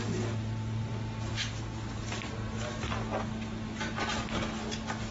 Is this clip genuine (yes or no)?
yes